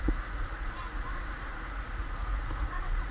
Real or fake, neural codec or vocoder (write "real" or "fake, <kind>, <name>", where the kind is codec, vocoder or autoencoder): fake, vocoder, Vocos